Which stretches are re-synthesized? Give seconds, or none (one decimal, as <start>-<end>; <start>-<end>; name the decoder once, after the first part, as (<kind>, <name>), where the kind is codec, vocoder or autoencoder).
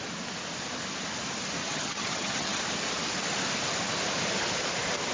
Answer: 1.6-2.6 (vocoder, HiFi-GAN)